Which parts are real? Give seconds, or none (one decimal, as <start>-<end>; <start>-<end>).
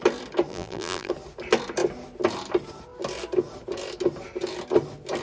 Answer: 0.0-0.5; 1.1-5.2